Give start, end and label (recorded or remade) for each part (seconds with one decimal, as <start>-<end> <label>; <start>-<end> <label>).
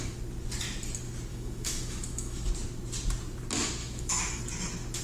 0.0-1.3 recorded; 1.3-2.5 remade; 2.5-3.8 recorded; 3.8-4.4 remade; 4.4-5.0 recorded